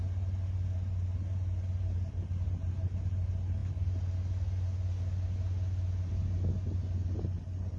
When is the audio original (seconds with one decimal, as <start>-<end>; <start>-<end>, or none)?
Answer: 0.0-7.8